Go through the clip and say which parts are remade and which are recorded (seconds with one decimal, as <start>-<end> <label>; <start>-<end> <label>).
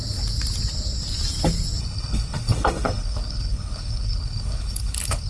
0.0-1.8 recorded; 1.8-5.3 remade